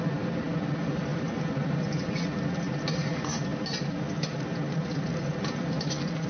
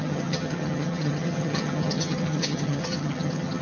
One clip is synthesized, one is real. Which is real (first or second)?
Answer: first